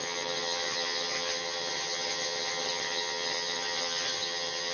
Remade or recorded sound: remade